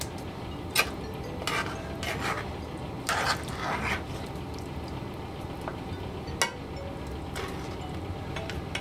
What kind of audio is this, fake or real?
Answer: real